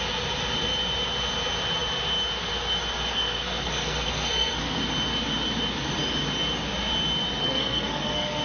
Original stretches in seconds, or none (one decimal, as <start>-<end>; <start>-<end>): 0.0-3.1; 4.8-7.4